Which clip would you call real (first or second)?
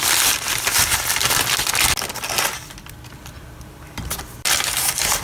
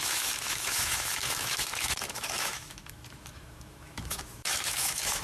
first